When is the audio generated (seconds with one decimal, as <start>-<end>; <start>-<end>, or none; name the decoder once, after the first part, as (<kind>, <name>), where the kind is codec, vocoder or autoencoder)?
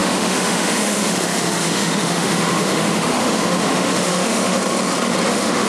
0.0-4.6 (autoencoder, DAC-VAE); 5.3-5.7